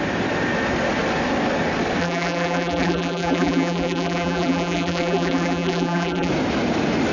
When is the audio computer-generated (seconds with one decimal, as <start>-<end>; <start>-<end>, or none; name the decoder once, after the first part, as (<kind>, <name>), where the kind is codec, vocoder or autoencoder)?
2.0-6.3 (vocoder, BigVGAN v2)

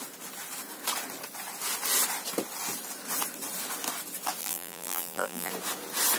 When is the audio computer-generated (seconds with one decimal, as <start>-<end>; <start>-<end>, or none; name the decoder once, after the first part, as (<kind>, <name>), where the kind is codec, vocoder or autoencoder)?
4.4-5.5 (vocoder, BigVGAN v2)

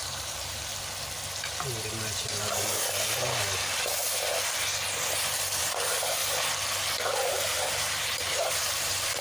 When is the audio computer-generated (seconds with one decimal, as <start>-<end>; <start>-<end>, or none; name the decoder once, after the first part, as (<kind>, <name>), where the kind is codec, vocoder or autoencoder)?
0.0-0.7 (vocoder, BigVGAN v2); 5.6-6.2; 7.3-9.2

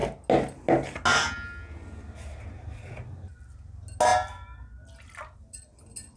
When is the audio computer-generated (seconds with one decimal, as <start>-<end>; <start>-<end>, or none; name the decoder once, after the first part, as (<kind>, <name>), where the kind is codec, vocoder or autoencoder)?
none

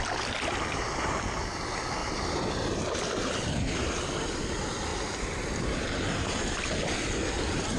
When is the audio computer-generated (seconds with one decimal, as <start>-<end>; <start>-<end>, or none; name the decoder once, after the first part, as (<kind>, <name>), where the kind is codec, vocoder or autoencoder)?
2.0-4.4 (vocoder, BigVGAN v2); 4.9-6.5

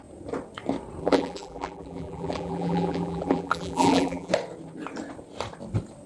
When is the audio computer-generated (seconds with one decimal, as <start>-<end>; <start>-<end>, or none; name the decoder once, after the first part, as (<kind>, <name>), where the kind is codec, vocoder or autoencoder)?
1.0-4.3 (vocoder, BigVGAN v2)